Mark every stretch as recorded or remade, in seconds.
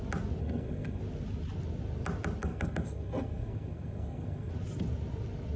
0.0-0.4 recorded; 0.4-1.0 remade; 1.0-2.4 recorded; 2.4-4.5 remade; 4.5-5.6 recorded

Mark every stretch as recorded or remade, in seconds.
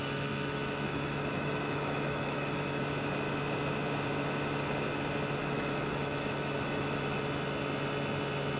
0.0-2.8 remade; 2.8-5.4 recorded; 5.4-7.2 remade; 7.2-8.6 recorded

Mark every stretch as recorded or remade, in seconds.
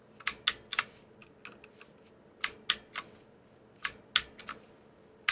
0.0-5.3 recorded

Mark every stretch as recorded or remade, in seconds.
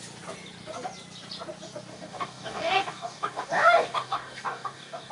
0.0-1.9 recorded; 1.9-5.1 remade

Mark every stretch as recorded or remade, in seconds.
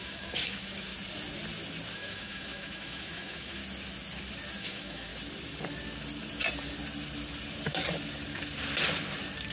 0.0-0.9 remade; 0.9-1.9 recorded; 1.9-3.6 remade; 3.6-4.6 recorded; 4.6-5.1 remade; 5.1-9.5 recorded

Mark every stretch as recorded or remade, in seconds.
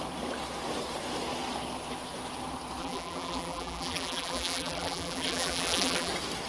0.0-2.8 recorded; 2.8-6.1 remade; 6.1-6.5 recorded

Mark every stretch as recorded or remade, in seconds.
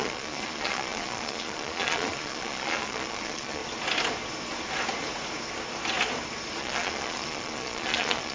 0.0-3.6 remade; 3.6-6.6 recorded; 6.6-8.3 remade